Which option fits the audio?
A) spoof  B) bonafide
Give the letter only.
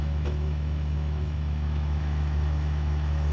A